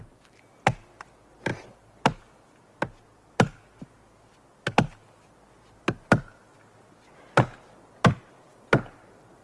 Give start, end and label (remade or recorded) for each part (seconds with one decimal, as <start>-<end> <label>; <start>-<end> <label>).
0.0-8.5 recorded; 8.5-9.4 remade